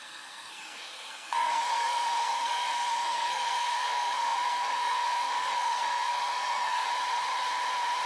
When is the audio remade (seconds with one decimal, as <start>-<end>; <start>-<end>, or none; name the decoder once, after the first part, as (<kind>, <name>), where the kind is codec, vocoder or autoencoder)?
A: 0.0-6.9 (codec, SNAC)